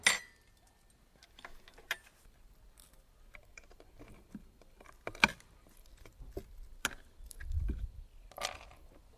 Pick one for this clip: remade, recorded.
recorded